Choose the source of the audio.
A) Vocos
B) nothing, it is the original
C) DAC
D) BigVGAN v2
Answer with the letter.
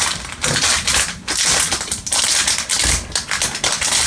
B